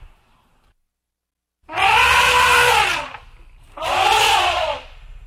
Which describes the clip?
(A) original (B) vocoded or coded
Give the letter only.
A